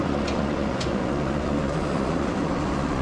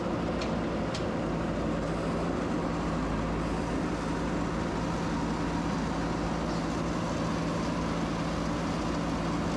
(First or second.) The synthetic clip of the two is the first